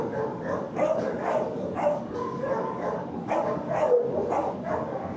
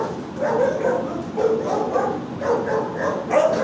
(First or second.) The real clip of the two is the second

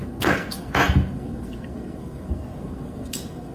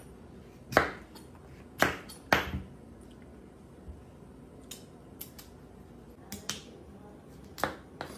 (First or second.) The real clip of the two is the second